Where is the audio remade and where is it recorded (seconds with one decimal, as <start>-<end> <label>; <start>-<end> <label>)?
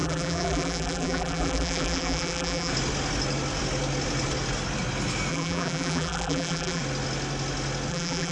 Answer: 0.0-2.7 remade; 2.7-5.3 recorded; 5.3-6.8 remade; 6.8-7.9 recorded; 7.9-8.3 remade